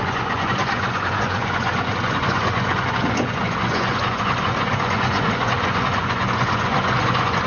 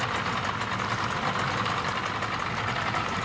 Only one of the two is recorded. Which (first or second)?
second